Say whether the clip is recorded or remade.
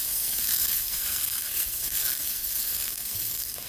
remade